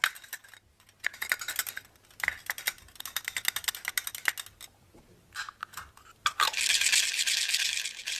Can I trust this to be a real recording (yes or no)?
yes